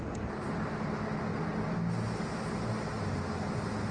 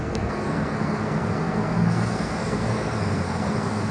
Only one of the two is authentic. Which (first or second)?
first